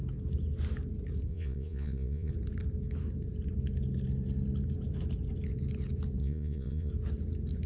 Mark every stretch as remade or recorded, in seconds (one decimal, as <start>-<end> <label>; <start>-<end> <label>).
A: 0.0-1.3 recorded; 1.3-2.3 remade; 2.3-6.2 recorded; 6.2-6.9 remade; 6.9-7.7 recorded